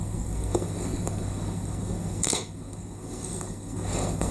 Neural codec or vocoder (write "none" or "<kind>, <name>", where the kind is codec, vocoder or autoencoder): codec, SNAC